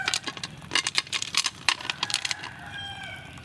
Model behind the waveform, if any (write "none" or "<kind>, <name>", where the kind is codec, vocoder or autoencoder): vocoder, BigVGAN v2